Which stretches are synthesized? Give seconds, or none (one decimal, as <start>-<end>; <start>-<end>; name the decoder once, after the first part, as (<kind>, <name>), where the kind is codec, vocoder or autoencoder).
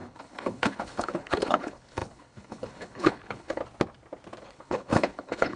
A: 0.0-3.6 (codec, HILCodec); 4.4-5.6